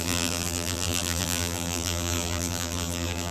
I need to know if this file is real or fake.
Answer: fake